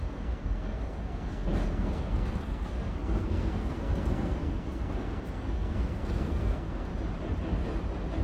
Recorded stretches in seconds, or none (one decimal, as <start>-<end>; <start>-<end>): 6.9-8.2